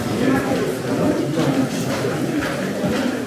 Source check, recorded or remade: recorded